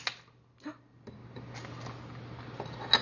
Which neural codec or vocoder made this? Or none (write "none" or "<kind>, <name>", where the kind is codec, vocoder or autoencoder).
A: none